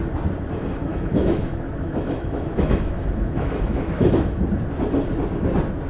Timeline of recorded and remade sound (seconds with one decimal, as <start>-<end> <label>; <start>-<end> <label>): 0.0-0.9 recorded; 0.9-4.4 remade; 4.4-5.9 recorded